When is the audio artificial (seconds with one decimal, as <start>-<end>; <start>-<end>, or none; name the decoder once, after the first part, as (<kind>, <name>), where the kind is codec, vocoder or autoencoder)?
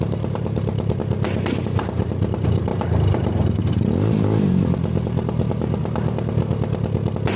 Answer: 0.0-1.0 (vocoder, BigVGAN v2); 1.6-5.8